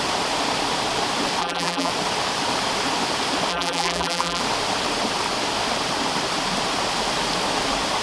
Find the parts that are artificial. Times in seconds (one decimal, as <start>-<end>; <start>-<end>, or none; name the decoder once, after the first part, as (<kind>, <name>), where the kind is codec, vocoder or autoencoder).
1.4-1.9 (vocoder, BigVGAN v2); 3.5-4.4

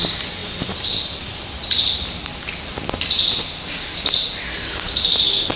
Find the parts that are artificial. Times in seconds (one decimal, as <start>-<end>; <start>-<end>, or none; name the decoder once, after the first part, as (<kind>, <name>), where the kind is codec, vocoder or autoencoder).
0.4-1.2 (vocoder, BigVGAN v2)